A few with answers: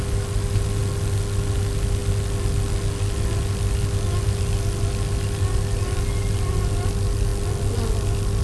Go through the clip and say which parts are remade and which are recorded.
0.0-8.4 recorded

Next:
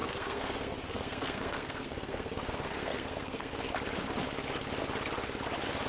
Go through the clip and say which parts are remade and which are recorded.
0.0-3.5 remade; 3.5-5.9 recorded